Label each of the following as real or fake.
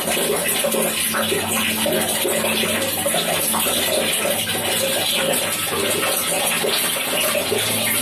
real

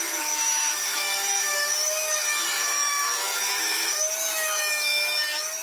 fake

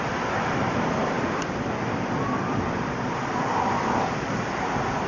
fake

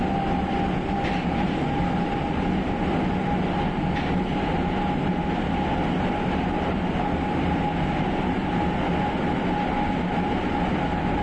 real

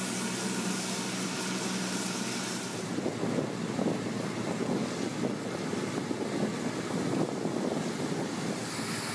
real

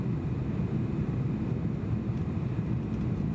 real